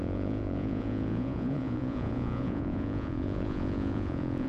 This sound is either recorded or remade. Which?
remade